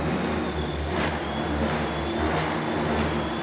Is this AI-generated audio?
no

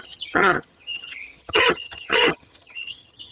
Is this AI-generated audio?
yes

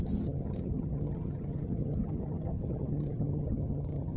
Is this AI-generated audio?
yes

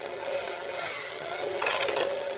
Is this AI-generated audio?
yes